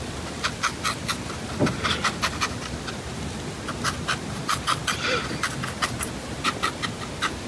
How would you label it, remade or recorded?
recorded